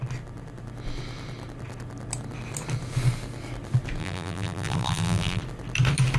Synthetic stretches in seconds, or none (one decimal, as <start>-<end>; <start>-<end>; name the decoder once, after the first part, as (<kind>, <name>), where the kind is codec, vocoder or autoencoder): 4.0-5.4 (vocoder, BigVGAN v2)